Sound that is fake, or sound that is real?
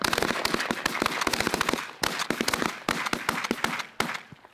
real